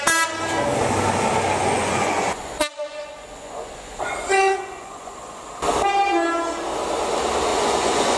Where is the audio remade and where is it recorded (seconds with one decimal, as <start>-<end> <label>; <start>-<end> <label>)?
0.0-1.6 recorded; 1.6-5.5 remade; 5.5-7.5 recorded; 7.5-8.2 remade